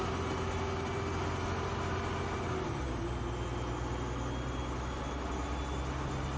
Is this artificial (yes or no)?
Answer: no